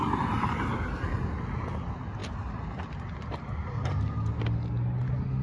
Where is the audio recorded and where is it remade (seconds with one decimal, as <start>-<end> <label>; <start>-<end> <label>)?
0.0-5.4 recorded

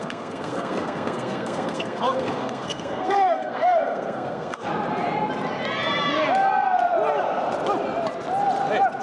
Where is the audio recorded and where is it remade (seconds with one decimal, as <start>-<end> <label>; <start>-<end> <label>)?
0.0-4.7 remade; 4.7-9.0 recorded

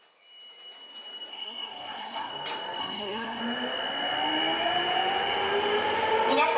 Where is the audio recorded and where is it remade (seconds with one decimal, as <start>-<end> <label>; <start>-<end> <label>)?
0.0-1.3 recorded; 1.3-2.3 remade; 2.3-2.8 recorded; 2.8-3.4 remade; 3.4-6.6 recorded

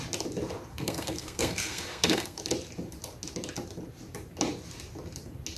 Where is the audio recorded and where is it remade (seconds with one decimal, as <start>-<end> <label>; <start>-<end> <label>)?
0.0-0.7 recorded; 0.7-2.4 remade; 2.4-5.6 recorded